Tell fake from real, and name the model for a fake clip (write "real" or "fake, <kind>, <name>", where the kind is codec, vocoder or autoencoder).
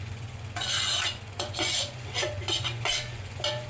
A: fake, vocoder, Vocos